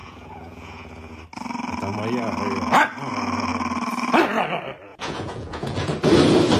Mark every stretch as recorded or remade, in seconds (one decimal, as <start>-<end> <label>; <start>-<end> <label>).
0.0-1.2 remade; 1.2-4.9 recorded; 4.9-5.9 remade; 5.9-6.6 recorded